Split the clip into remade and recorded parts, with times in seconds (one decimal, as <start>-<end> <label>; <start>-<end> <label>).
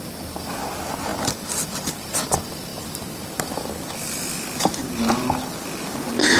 0.0-6.4 recorded